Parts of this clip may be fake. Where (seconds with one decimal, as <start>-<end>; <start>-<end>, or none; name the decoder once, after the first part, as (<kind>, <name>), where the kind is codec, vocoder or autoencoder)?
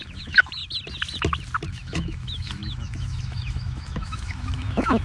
0.0-0.6 (autoencoder, DAC-VAE); 1.7-5.0